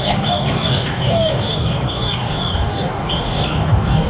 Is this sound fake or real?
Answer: fake